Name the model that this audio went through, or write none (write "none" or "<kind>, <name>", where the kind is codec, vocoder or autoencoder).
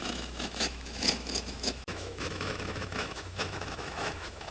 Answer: autoencoder, DAC-VAE